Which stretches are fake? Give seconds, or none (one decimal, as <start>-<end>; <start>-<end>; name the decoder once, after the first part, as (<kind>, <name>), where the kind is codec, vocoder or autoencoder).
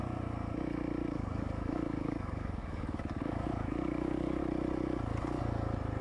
1.0-4.4 (codec, DAC)